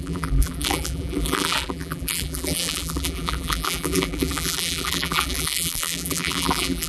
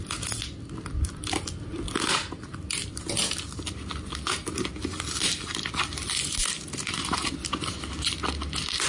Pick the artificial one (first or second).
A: first